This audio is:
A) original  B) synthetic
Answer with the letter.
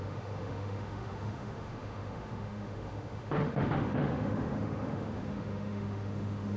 B